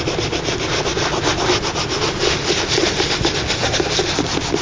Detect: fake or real real